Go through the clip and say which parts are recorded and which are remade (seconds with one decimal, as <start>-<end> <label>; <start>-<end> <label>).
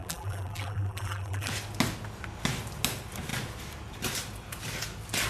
0.0-1.5 remade; 1.5-5.3 recorded